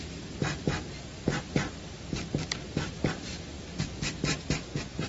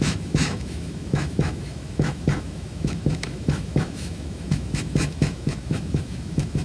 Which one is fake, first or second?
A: second